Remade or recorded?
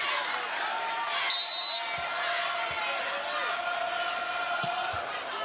recorded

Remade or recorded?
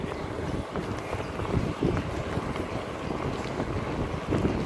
recorded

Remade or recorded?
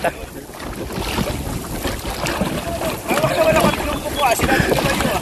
recorded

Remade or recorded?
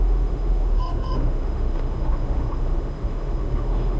remade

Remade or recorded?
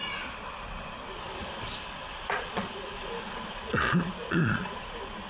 remade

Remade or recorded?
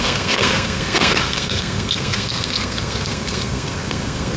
remade